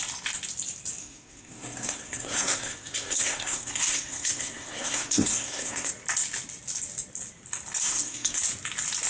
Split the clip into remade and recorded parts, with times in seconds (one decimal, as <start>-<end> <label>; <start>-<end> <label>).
0.0-1.0 recorded; 1.0-5.9 remade; 5.9-7.8 recorded; 7.8-8.4 remade; 8.4-9.1 recorded